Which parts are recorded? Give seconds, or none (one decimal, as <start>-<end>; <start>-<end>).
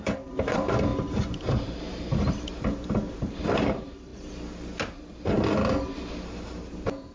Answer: 0.9-1.8; 2.5-3.1; 4.1-6.1